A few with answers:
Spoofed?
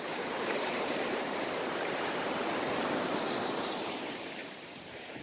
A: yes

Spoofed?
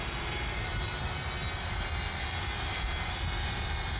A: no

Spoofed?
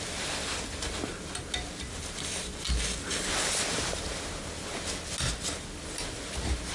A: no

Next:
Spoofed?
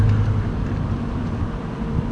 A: yes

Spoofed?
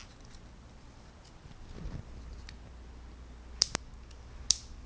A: no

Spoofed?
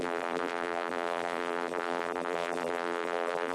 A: yes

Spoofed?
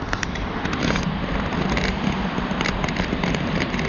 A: yes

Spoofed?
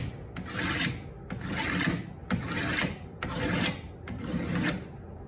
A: no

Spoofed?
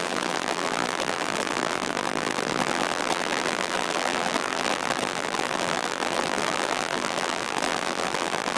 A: yes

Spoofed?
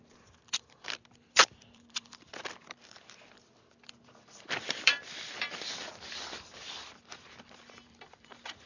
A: yes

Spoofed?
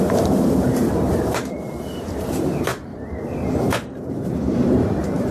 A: yes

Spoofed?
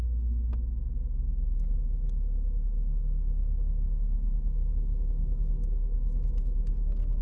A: no